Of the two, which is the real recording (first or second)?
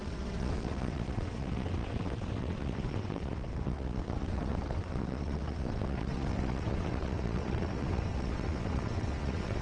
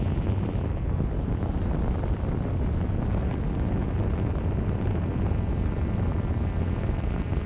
second